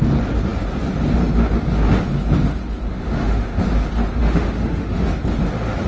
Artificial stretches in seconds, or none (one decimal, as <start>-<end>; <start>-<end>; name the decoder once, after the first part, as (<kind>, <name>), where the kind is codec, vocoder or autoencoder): 2.9-3.6 (autoencoder, DAC-VAE); 4.2-5.1